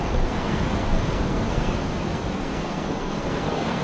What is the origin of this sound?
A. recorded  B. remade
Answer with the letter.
B